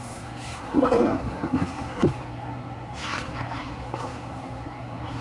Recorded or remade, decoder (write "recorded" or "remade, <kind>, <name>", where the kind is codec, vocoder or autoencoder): remade, codec, SNAC